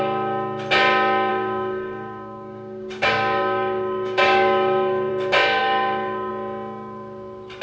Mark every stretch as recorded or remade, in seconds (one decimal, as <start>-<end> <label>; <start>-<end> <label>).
0.0-1.3 recorded; 1.3-5.1 remade; 5.1-5.6 recorded; 5.6-6.3 remade; 6.3-7.6 recorded